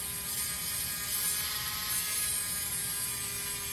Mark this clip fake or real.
real